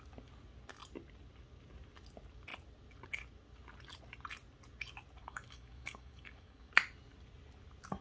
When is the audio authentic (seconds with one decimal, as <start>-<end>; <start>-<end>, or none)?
0.0-5.2; 6.7-8.0